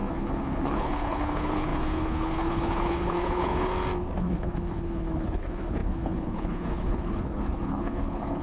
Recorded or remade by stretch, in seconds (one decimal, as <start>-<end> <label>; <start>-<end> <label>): 0.0-3.7 remade; 3.7-4.2 recorded; 4.2-8.4 remade